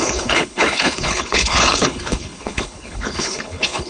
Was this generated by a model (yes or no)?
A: yes